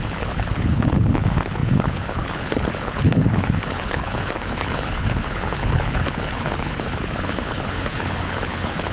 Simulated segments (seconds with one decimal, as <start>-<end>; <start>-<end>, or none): 0.0-8.9